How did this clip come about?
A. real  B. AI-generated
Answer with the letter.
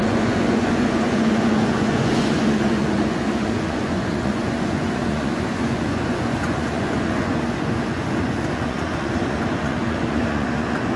B